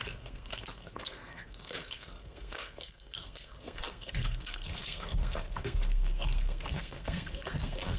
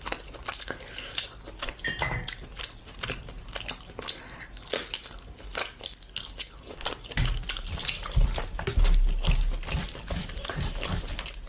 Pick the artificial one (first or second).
first